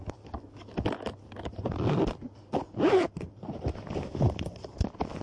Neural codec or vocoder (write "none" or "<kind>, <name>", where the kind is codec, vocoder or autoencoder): vocoder, BigVGAN v2